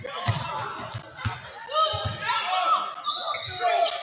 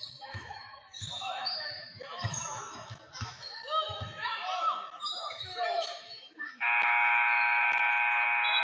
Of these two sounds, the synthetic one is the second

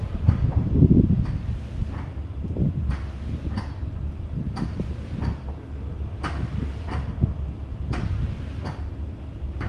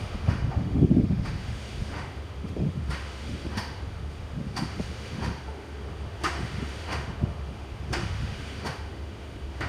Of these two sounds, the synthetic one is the second